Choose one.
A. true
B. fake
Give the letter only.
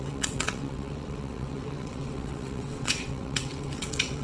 B